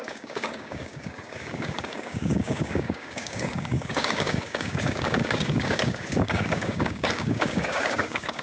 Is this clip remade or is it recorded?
remade